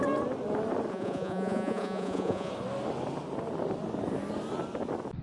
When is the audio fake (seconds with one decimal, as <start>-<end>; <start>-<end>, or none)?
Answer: 0.9-2.5